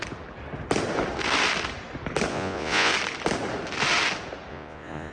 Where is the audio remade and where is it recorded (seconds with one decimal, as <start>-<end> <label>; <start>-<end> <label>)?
0.0-2.3 recorded; 2.3-2.9 remade; 2.9-4.5 recorded; 4.5-5.1 remade